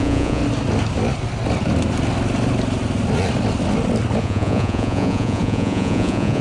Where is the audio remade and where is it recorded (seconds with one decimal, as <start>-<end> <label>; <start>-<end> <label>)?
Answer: 0.0-0.4 remade; 0.4-4.2 recorded; 4.2-6.4 remade